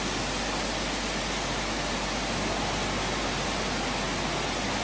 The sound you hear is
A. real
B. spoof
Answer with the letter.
A